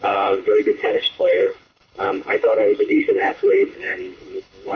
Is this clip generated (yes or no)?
yes